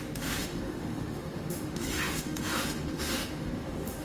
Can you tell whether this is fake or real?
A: fake